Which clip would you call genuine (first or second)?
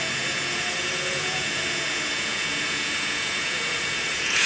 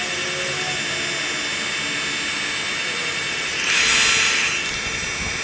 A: second